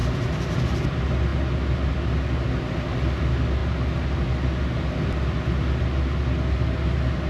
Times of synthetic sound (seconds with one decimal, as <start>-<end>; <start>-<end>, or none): none